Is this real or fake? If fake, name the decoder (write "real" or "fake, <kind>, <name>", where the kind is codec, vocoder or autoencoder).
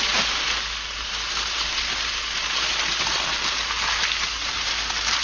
real